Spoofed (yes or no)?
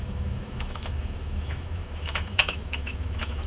yes